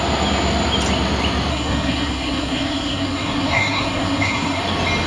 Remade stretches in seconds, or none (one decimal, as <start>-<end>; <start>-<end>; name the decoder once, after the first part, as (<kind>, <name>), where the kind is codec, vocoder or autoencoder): 1.5-4.6 (codec, SNAC)